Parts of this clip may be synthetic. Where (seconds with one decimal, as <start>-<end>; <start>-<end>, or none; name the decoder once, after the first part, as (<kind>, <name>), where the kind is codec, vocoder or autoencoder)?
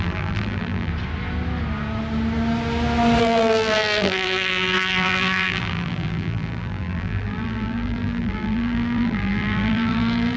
0.0-0.9 (vocoder, BigVGAN v2); 3.2-10.4